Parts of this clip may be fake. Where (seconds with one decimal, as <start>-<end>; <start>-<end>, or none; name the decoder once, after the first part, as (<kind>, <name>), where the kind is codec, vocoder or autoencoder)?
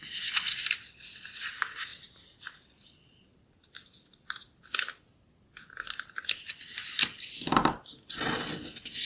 none